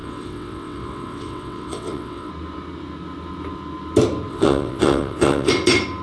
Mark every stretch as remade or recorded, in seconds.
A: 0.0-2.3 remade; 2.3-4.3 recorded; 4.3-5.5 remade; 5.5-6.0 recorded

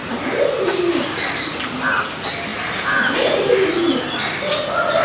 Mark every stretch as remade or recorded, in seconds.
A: 0.0-5.0 recorded